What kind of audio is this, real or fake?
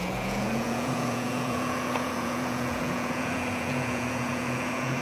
fake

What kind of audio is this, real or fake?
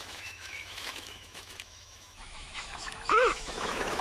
fake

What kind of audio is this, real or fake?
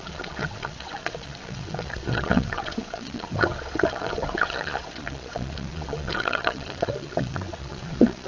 fake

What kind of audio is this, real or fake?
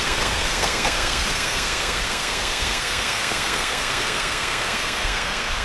fake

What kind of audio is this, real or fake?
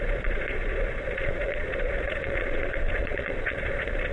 fake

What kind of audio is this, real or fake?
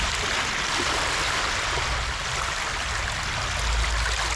real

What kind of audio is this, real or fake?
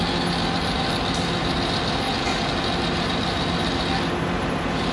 real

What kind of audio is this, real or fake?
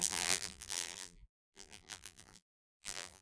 fake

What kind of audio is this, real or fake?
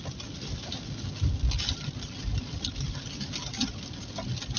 real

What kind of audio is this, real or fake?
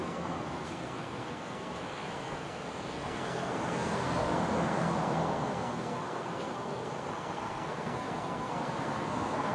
fake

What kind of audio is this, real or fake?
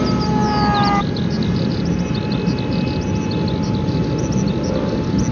real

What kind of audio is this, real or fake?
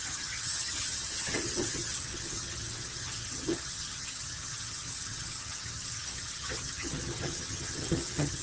fake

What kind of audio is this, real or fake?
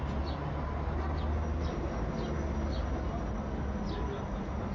real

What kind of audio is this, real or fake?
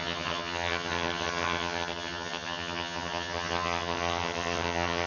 fake